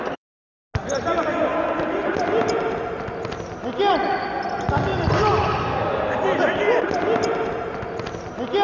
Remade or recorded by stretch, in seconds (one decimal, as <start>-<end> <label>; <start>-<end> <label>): 0.0-4.9 recorded; 4.9-6.4 remade; 6.4-8.6 recorded